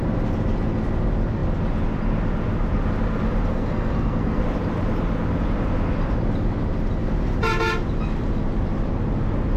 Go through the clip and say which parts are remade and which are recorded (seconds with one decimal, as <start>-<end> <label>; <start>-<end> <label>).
0.0-3.5 recorded; 3.5-4.4 remade; 4.4-9.6 recorded

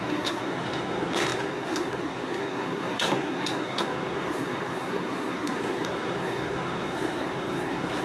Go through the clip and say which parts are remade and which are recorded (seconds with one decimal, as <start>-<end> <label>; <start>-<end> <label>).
0.0-8.0 remade

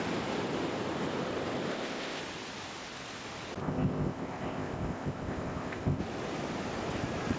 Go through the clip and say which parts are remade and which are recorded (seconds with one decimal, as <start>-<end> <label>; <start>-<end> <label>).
0.0-1.7 recorded; 1.7-2.2 remade; 2.2-3.6 recorded; 3.6-6.0 remade; 6.0-7.4 recorded